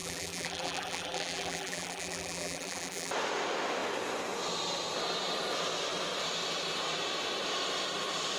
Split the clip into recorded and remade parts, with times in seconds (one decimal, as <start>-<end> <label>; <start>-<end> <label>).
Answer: 0.0-3.1 remade; 3.1-8.4 recorded